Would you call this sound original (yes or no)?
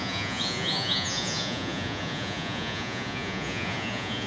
no